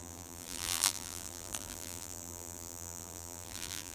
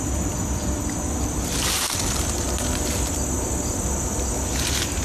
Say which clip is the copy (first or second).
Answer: first